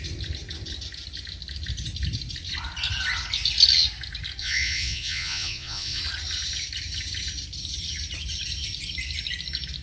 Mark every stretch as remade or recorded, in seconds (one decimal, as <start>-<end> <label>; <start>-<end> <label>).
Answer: 0.0-4.4 recorded; 4.4-6.0 remade; 6.0-9.8 recorded